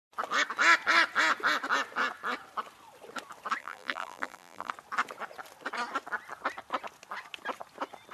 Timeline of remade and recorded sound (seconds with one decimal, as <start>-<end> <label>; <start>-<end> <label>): 0.0-3.6 recorded; 3.6-4.7 remade; 4.7-8.1 recorded